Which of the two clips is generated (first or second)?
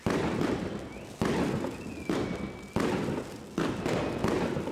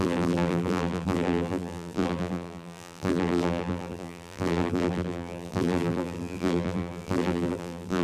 second